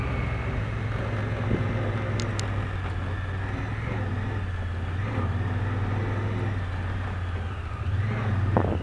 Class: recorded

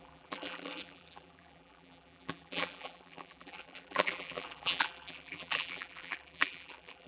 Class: remade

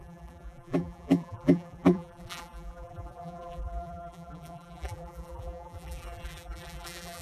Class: remade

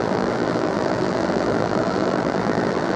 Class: remade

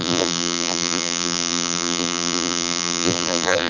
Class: remade